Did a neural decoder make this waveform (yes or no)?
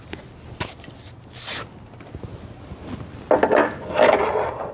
no